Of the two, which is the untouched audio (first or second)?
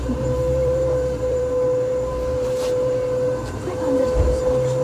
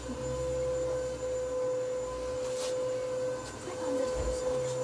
second